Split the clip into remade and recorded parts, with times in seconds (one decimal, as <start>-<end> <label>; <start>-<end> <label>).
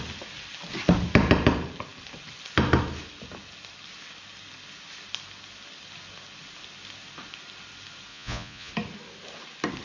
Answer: 0.0-8.1 recorded; 8.1-8.7 remade; 8.7-9.8 recorded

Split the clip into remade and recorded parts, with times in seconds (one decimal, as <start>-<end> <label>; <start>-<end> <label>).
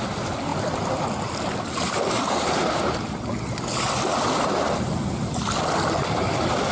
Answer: 0.0-6.7 recorded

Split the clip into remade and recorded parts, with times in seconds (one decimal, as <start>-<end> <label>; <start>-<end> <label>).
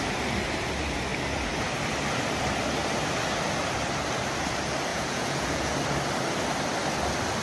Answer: 0.0-4.9 recorded; 4.9-5.7 remade; 5.7-7.4 recorded